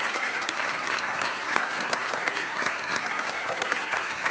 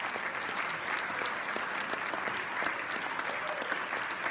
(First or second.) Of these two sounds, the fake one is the first